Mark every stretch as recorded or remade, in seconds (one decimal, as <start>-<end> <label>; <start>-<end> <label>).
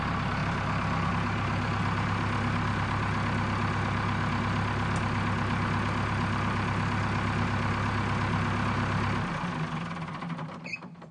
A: 0.0-11.1 recorded